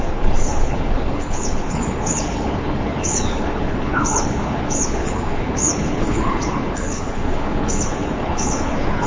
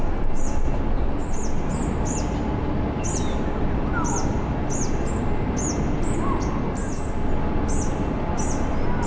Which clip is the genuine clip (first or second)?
second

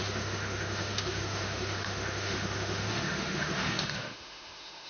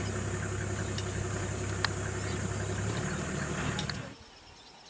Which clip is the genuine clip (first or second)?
second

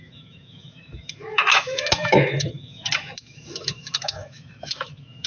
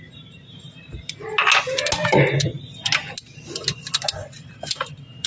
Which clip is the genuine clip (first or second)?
second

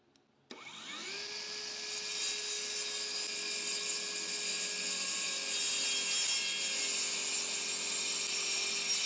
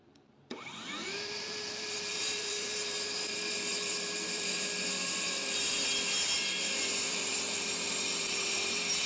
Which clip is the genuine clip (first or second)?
first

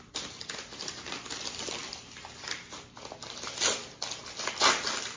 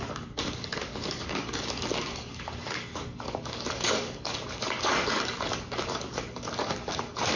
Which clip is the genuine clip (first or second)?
first